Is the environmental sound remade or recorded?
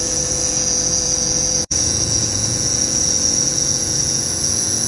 remade